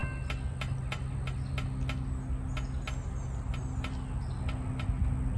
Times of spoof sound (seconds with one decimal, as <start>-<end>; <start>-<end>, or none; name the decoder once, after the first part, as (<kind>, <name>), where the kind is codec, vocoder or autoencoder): none